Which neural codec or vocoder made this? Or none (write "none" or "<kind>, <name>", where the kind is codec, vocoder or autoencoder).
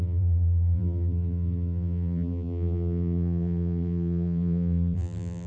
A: vocoder, BigVGAN v2